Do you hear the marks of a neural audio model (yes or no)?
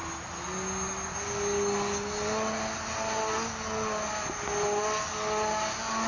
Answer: no